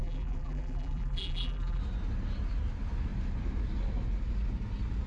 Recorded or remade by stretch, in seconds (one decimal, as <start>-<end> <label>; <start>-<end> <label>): 0.0-1.8 remade; 1.8-5.1 recorded